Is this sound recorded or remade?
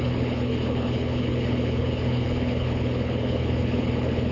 remade